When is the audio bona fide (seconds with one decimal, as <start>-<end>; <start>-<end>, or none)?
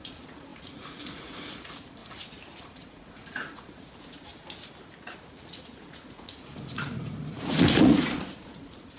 2.0-2.6; 4.3-5.3